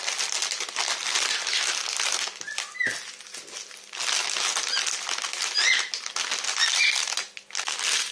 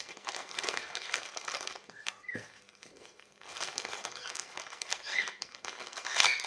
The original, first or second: first